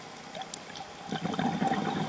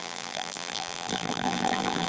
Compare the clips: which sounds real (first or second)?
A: first